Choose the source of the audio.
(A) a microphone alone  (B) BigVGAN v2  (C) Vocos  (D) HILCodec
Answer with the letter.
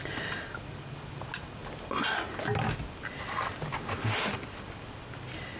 A